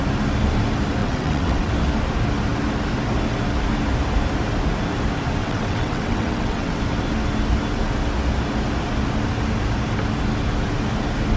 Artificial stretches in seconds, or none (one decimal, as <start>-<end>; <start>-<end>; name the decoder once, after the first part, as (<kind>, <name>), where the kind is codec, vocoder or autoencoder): 1.0-1.7 (vocoder, WaveNeXt); 5.4-6.8